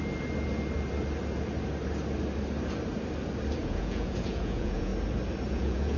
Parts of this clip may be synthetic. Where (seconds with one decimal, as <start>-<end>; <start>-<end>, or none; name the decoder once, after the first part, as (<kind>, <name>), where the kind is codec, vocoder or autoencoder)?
3.6-4.9 (vocoder, Vocos); 5.5-6.0